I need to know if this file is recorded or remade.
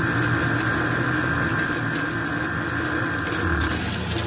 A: recorded